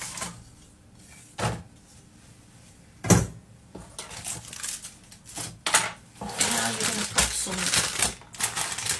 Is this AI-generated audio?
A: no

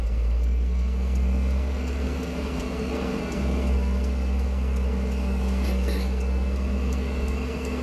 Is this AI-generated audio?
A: yes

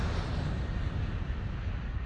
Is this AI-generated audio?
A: no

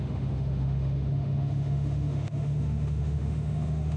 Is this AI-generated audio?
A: yes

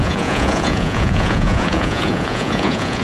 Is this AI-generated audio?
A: yes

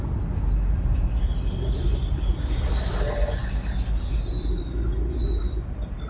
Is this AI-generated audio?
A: no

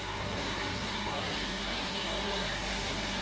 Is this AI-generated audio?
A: yes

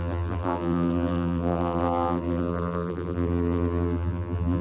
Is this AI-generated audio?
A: yes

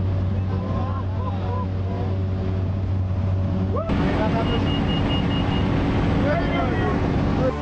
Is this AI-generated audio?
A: no